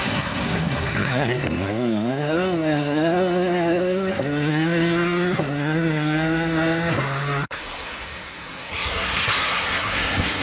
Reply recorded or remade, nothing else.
remade